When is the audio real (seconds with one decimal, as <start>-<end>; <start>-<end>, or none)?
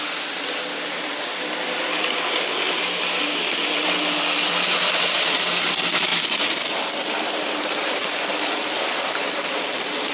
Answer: 0.0-10.1